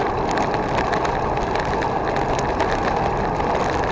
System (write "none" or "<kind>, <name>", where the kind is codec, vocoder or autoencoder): none